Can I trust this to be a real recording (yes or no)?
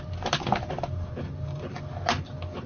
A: yes